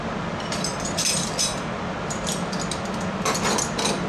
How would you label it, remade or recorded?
recorded